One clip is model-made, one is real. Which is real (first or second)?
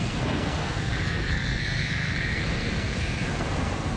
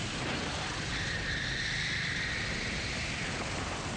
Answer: second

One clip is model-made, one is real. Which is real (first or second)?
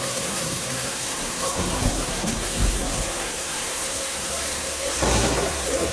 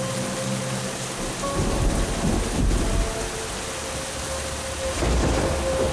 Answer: second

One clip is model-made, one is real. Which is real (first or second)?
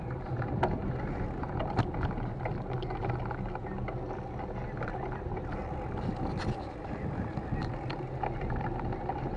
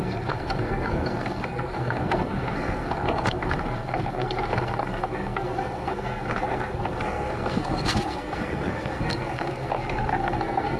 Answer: first